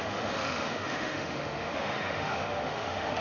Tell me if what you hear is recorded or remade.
remade